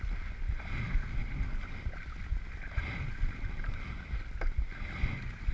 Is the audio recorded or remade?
recorded